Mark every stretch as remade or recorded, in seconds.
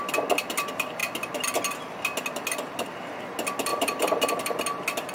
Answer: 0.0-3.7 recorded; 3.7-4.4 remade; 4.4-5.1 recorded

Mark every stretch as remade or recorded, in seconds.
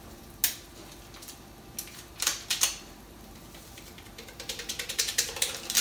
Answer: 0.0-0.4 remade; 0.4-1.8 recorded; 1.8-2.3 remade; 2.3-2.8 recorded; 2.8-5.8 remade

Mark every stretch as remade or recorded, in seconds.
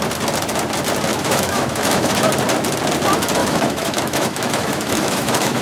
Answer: 0.0-1.1 recorded; 1.1-2.3 remade; 2.3-3.4 recorded; 3.4-5.6 remade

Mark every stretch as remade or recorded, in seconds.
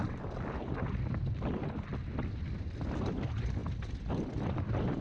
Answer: 0.0-5.0 recorded